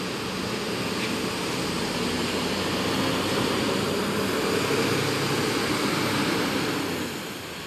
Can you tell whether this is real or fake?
real